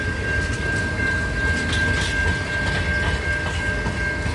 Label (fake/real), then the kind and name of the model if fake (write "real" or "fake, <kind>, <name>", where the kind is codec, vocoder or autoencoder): real